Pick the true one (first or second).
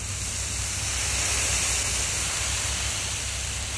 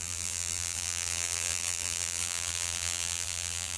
first